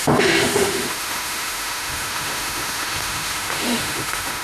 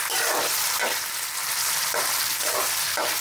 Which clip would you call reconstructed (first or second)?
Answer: first